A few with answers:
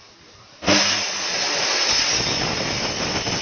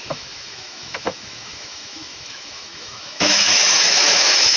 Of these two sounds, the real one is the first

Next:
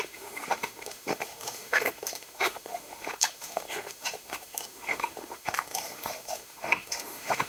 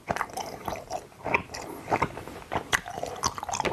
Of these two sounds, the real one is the second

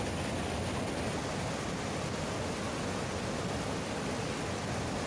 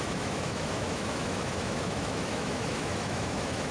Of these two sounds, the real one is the first